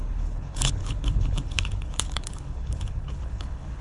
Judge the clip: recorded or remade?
remade